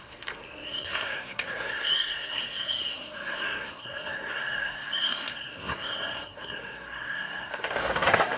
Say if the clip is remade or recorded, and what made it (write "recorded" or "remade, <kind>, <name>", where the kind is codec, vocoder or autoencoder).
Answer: remade, codec, SNAC